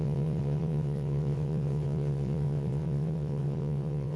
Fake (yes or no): yes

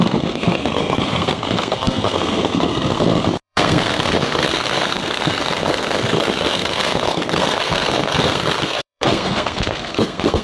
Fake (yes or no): yes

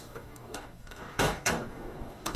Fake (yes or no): yes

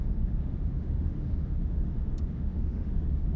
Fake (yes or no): yes